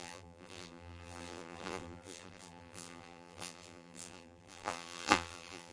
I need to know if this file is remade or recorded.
remade